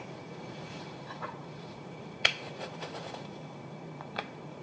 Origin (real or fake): fake